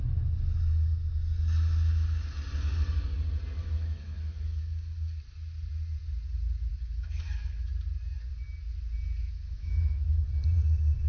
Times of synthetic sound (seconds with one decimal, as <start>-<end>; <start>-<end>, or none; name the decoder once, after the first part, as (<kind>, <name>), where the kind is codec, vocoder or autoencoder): 3.6-4.6 (autoencoder, DAC-VAE); 6.7-7.7; 9.2-10.2